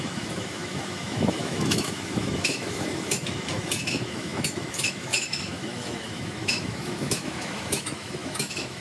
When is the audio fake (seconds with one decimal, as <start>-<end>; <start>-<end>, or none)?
0.0-8.8